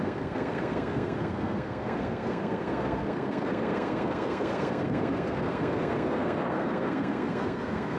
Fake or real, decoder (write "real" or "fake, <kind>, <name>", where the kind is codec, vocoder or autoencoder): fake, codec, SNAC